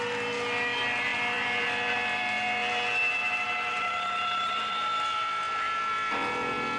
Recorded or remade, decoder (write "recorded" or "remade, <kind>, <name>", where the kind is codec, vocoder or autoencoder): recorded